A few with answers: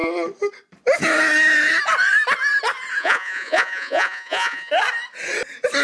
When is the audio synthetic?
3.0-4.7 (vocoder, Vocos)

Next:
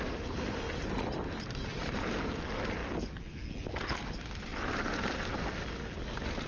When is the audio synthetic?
1.7-2.4 (vocoder, BigVGAN v2); 4.5-5.4

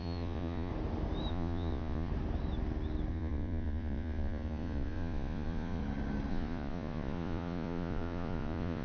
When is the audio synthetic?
0.0-0.7 (vocoder, Vocos); 1.3-2.1; 3.1-5.8; 6.3-8.8

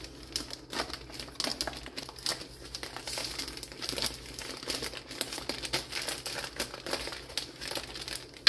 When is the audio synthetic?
none

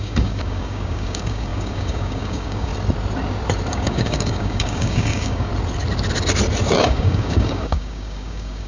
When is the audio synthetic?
0.0-2.7 (codec, DAC); 3.7-5.5; 6.8-8.7